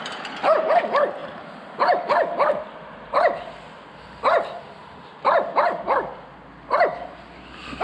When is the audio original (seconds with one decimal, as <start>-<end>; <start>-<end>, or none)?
0.0-7.8